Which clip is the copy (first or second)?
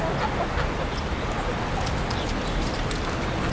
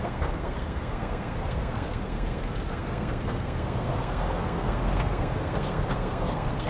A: second